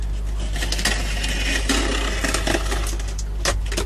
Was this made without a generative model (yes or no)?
yes